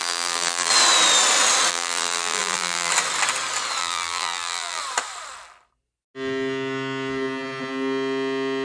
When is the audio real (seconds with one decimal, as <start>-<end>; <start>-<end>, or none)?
0.7-1.7; 2.9-3.8; 4.8-8.6